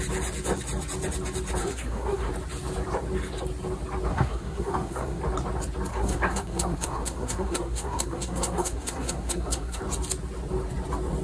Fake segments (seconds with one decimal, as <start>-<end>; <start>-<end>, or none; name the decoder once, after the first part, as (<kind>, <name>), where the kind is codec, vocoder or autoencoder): 1.6-2.3 (codec, SNAC); 4.1-5.2; 5.9-9.8

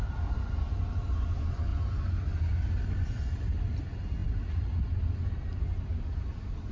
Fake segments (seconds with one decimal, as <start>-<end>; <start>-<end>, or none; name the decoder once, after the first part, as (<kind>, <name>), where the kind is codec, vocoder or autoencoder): none

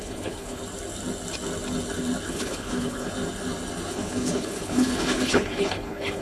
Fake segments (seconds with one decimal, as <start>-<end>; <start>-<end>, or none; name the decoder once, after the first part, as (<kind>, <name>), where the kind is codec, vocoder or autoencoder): 0.0-0.6 (codec, HILCodec); 2.3-3.1; 3.9-6.2

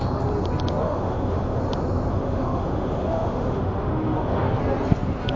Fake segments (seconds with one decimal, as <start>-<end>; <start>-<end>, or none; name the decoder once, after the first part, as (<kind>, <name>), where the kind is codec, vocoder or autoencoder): 0.8-1.6 (autoencoder, DAC-VAE); 2.1-4.6

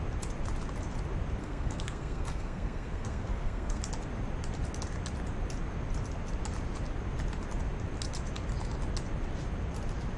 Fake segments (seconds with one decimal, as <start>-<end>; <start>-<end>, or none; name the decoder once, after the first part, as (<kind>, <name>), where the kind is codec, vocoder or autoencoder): 1.4-3.8 (codec, SNAC)